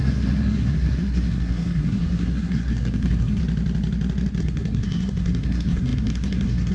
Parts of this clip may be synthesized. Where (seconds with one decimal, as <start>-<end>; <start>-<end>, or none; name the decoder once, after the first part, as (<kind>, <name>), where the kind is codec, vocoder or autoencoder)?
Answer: 0.0-3.4 (codec, SNAC); 4.4-6.7